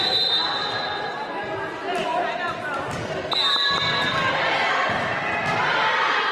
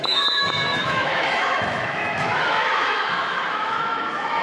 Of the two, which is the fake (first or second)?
second